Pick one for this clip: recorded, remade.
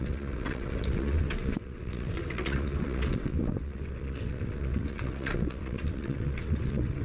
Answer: remade